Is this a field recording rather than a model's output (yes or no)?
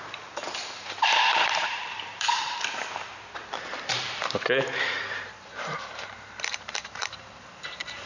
no